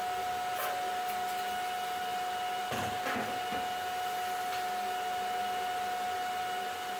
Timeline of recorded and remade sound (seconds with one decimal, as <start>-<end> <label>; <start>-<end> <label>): 0.0-7.0 recorded